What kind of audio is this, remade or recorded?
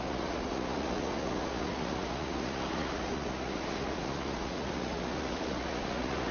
remade